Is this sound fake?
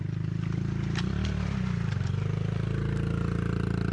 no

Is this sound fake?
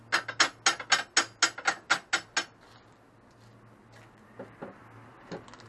no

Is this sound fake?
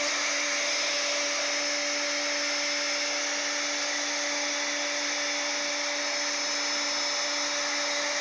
no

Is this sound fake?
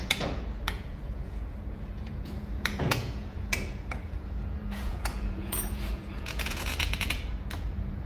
yes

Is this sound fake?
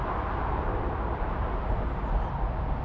no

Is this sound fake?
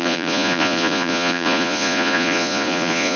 yes